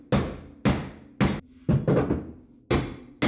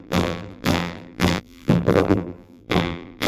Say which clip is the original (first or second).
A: first